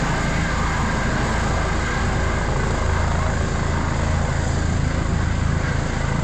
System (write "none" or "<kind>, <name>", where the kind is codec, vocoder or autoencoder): none